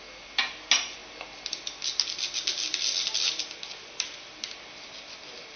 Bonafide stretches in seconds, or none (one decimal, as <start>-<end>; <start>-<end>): 0.0-5.6